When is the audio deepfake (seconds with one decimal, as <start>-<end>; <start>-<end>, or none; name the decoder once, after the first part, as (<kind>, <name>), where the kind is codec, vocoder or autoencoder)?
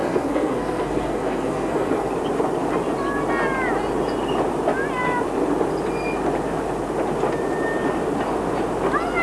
0.0-2.1 (codec, SNAC)